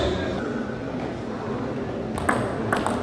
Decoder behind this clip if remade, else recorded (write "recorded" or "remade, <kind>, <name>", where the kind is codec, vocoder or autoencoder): recorded